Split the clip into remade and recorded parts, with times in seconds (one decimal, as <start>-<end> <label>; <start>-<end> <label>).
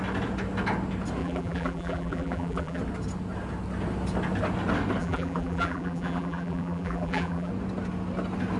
0.0-1.2 recorded; 1.2-2.8 remade; 2.8-5.0 recorded; 5.0-7.5 remade; 7.5-8.6 recorded